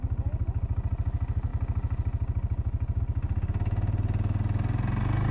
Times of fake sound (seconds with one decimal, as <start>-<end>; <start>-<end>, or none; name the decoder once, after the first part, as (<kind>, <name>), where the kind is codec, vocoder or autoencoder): none